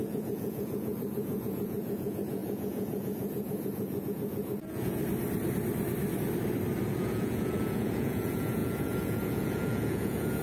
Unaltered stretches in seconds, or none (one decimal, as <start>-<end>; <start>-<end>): 5.0-6.9